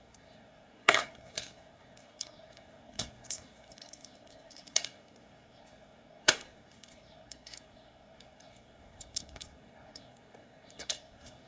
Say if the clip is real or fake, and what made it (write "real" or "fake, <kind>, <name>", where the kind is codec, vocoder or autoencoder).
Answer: fake, codec, SNAC